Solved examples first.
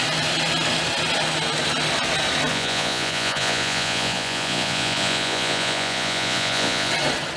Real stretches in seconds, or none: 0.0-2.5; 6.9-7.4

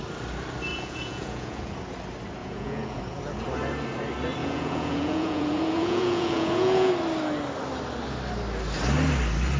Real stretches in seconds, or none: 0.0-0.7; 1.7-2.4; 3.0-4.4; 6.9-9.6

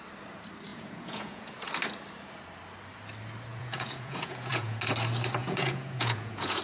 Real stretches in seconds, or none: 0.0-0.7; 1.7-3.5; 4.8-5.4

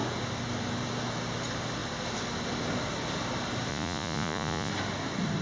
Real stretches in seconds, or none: 0.0-3.7; 4.7-5.4

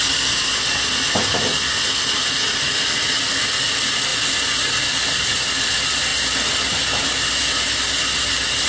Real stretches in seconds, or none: 0.0-8.7